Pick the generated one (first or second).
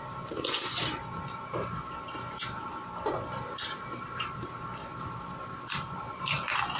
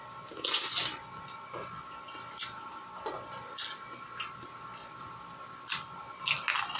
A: first